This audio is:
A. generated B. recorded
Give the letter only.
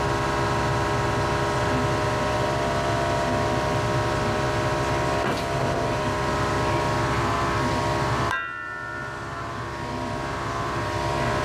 B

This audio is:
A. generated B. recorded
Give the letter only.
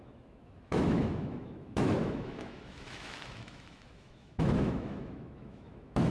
A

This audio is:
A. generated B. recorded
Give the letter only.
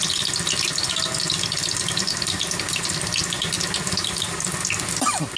B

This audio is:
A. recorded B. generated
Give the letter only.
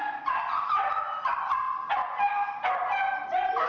A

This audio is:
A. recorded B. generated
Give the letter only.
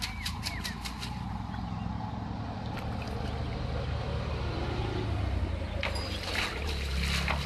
A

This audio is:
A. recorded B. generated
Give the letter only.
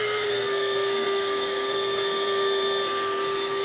B